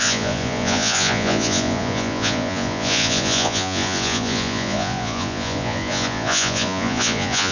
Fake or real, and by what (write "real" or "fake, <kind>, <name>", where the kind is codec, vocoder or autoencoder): fake, vocoder, Vocos